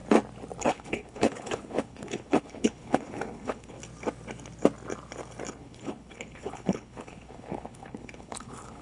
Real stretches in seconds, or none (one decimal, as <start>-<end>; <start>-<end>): 0.0-0.6; 3.8-5.5